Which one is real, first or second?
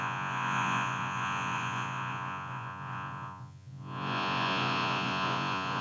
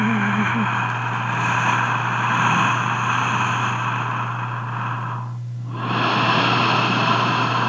second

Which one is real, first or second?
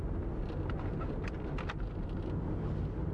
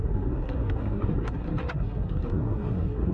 first